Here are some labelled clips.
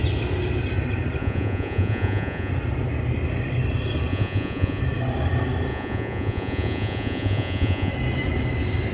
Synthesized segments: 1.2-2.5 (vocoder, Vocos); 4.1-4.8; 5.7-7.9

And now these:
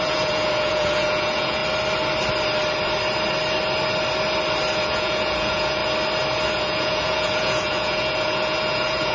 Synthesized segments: 0.0-1.6 (vocoder, Vocos); 4.8-5.8; 6.5-9.1

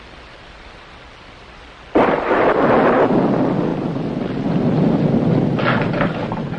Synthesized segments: none

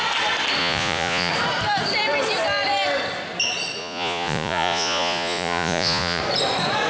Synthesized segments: 0.6-1.3 (vocoder, Vocos); 3.8-6.2

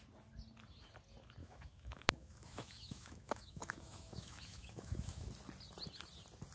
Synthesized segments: 1.4-5.3 (autoencoder, DAC-VAE)

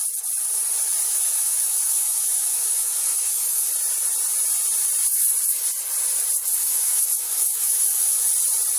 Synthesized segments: 1.1-3.7 (autoencoder, DAC-VAE); 6.6-8.3